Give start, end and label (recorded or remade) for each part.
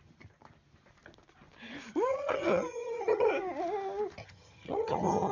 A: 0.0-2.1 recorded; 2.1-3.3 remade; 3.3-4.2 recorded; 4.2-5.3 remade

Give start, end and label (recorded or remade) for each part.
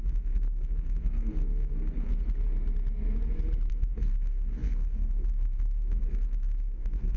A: 0.0-2.1 remade; 2.1-3.7 recorded; 3.7-7.2 remade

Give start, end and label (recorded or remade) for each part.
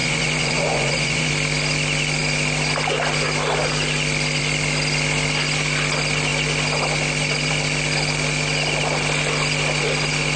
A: 0.0-1.3 remade; 1.3-10.4 recorded